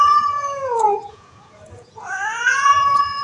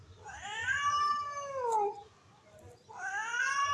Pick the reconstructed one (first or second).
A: first